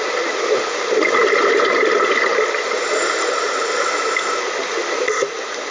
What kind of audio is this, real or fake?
real